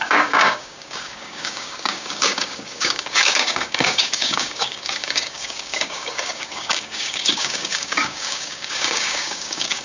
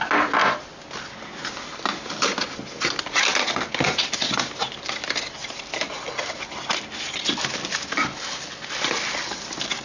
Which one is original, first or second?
second